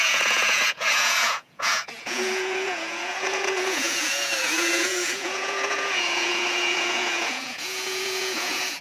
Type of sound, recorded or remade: remade